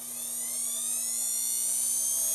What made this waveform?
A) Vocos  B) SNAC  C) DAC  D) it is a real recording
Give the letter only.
D